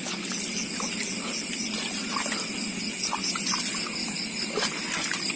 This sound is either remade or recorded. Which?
recorded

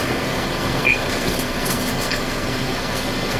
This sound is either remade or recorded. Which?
remade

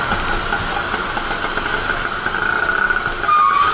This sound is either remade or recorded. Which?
recorded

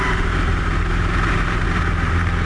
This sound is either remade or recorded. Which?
remade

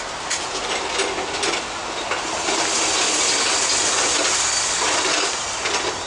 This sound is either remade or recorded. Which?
recorded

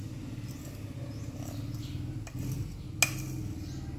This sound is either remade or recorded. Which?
recorded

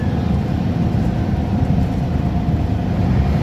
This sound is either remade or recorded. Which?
recorded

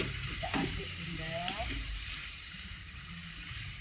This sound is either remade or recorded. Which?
remade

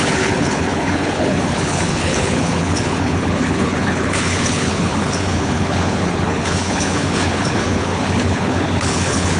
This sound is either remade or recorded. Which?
remade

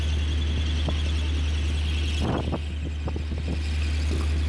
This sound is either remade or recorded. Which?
recorded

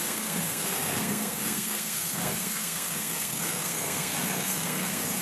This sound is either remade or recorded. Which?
remade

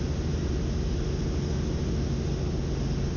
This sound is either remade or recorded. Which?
recorded